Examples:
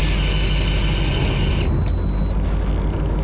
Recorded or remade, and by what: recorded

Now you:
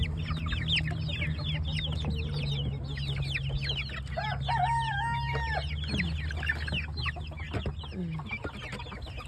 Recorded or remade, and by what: recorded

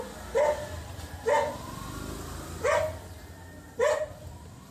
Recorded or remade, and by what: recorded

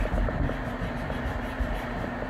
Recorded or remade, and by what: recorded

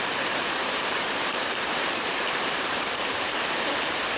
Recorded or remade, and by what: remade, vocoder, BigVGAN v2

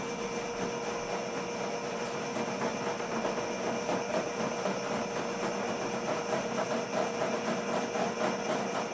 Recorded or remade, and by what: recorded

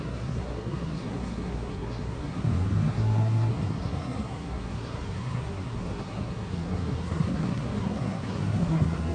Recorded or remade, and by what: remade, codec, SNAC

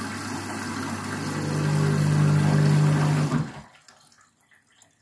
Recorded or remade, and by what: recorded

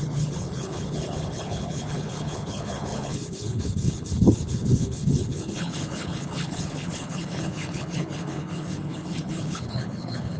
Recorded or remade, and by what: remade, codec, HILCodec